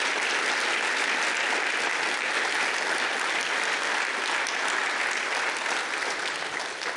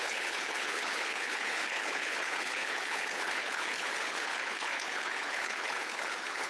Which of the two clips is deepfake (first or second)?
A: second